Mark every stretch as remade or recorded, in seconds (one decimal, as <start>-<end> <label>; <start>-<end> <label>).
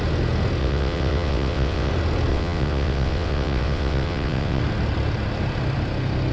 0.0-0.6 recorded; 0.6-1.9 remade; 1.9-2.3 recorded; 2.3-4.6 remade; 4.6-6.3 recorded